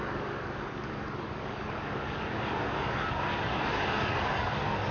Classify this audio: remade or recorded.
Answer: remade